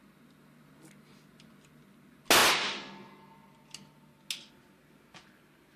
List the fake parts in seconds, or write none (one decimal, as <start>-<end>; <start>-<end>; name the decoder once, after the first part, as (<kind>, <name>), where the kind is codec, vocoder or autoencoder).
none